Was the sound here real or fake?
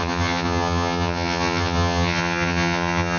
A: fake